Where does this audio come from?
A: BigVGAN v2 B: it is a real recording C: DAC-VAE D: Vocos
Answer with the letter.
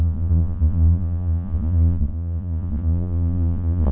D